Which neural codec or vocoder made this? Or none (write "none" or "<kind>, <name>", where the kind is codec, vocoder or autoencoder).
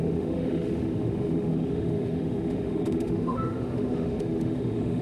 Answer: autoencoder, DAC-VAE